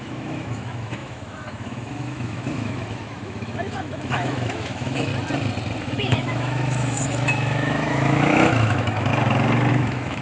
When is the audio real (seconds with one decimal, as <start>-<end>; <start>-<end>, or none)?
5.1-5.8; 9.1-9.7